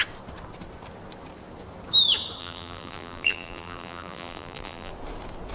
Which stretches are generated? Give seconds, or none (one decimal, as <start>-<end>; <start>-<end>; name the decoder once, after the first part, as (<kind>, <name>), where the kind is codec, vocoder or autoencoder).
2.4-4.9 (vocoder, BigVGAN v2)